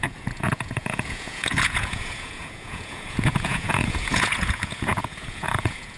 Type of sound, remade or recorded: remade